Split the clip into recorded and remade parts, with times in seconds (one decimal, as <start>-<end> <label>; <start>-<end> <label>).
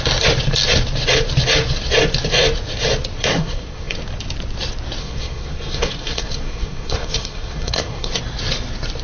0.0-3.3 recorded; 3.3-4.0 remade; 4.0-5.0 recorded; 5.0-8.2 remade; 8.2-9.0 recorded